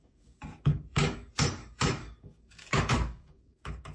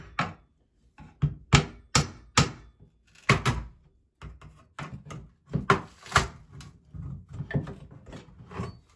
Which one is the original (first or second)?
second